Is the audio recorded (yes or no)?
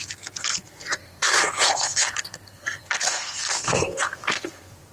no